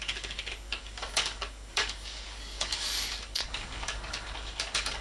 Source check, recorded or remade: remade